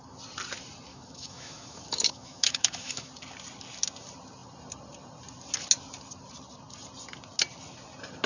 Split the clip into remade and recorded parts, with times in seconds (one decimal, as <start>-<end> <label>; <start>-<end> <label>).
0.0-0.9 recorded; 0.9-3.1 remade; 3.1-8.3 recorded